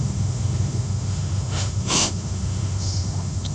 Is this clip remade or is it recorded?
remade